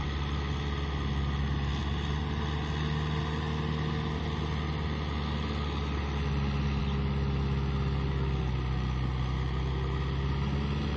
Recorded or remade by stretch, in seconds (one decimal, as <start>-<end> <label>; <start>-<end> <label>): 0.0-11.0 recorded